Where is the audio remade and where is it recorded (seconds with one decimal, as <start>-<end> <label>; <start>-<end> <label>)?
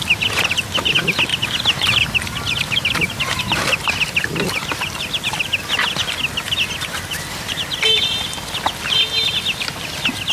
0.0-1.3 recorded; 1.3-3.4 remade; 3.4-10.3 recorded